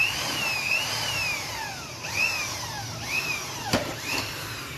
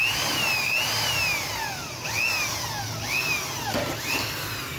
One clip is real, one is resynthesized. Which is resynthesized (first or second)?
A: first